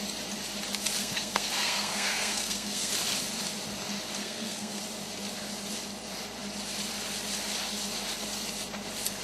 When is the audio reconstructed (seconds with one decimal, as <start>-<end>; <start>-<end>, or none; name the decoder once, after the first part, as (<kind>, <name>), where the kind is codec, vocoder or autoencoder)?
1.0-2.9 (codec, SNAC); 4.2-4.8